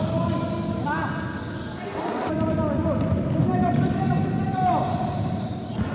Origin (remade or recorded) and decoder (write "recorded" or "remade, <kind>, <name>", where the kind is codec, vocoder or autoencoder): recorded